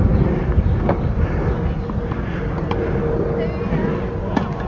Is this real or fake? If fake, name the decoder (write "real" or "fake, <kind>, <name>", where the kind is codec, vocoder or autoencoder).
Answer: real